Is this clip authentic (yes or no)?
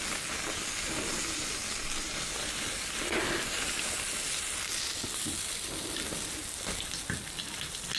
yes